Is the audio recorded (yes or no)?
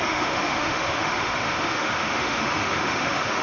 no